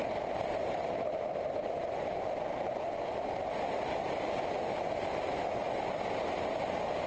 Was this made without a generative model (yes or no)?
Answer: yes